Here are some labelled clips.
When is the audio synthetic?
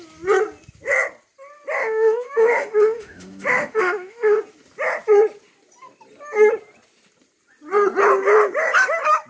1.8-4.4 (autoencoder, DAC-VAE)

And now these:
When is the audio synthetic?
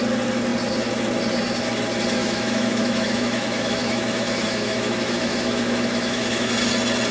2.2-6.5 (autoencoder, DAC-VAE)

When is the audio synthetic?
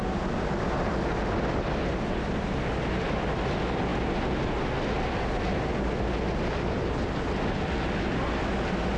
none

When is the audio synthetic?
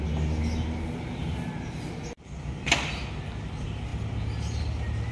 none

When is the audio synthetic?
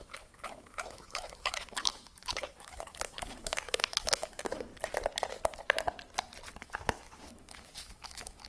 0.0-4.7 (autoencoder, DAC-VAE); 6.6-8.5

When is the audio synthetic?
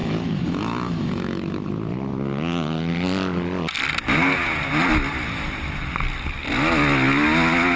0.0-1.7 (autoencoder, DAC-VAE)